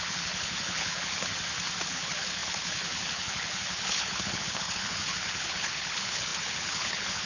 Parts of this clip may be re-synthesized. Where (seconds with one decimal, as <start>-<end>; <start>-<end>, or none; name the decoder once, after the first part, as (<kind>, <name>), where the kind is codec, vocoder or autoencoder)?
0.0-1.3 (codec, HILCodec); 1.8-7.3